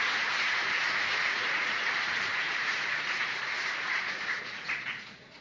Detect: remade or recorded remade